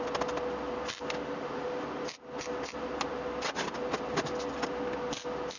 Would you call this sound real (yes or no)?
yes